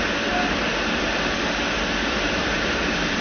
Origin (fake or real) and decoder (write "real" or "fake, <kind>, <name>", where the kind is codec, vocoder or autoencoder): real